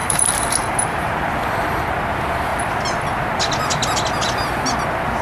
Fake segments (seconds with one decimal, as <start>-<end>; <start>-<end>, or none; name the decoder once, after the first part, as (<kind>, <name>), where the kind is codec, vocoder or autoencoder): 0.0-1.1 (vocoder, BigVGAN v2)